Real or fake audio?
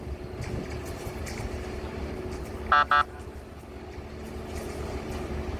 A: real